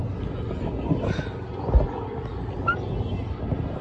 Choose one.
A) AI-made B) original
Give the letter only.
B